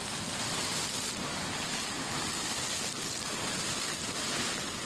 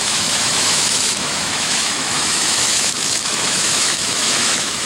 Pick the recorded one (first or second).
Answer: first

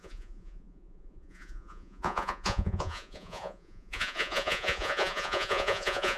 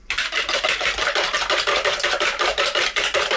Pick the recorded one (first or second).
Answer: second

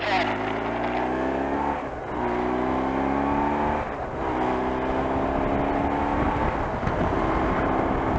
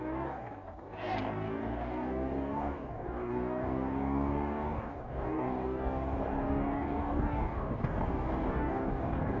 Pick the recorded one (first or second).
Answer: first